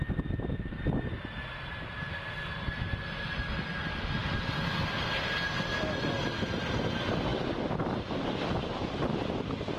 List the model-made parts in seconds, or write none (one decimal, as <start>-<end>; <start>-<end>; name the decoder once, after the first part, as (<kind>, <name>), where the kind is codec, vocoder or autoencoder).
none